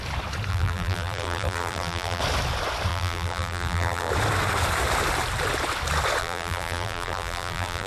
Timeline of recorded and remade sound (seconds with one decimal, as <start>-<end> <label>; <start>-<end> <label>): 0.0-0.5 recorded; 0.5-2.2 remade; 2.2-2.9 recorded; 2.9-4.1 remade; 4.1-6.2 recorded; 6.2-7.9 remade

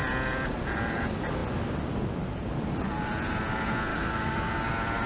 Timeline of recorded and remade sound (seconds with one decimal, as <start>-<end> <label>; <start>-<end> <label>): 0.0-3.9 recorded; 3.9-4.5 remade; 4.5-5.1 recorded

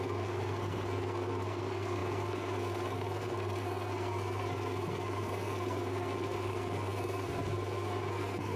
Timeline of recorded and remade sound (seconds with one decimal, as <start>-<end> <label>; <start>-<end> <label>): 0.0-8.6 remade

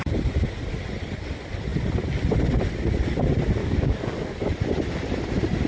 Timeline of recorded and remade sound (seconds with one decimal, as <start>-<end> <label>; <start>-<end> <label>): 0.0-3.6 recorded; 3.6-4.5 remade; 4.5-5.7 recorded